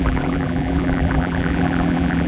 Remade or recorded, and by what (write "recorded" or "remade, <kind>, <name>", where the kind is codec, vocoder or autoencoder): remade, vocoder, BigVGAN v2